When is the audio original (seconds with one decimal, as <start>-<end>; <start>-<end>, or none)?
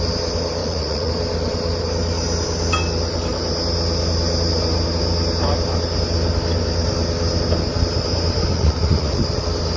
0.0-0.6; 1.1-8.5; 9.2-9.8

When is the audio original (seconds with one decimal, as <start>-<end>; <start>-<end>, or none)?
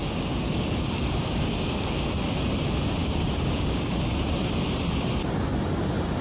2.2-3.0; 4.0-6.2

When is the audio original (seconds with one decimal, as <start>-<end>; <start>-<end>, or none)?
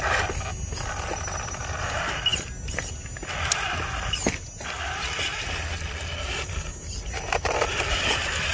0.0-8.5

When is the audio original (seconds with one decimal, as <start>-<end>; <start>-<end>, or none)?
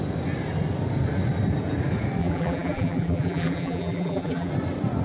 0.0-2.2; 4.5-5.0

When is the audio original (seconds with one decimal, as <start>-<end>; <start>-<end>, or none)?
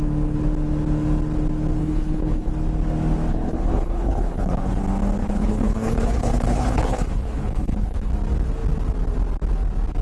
0.0-1.8; 2.5-3.3; 4.8-5.2; 8.1-10.0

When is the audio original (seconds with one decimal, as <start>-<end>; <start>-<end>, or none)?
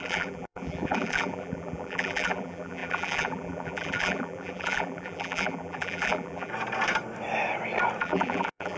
6.5-8.0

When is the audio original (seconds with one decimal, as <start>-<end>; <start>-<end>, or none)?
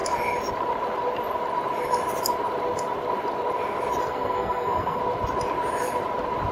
0.0-4.0; 5.0-6.5